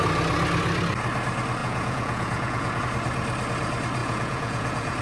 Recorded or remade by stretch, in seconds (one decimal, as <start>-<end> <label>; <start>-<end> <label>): 0.0-1.6 recorded; 1.6-2.8 remade; 2.8-4.0 recorded; 4.0-5.0 remade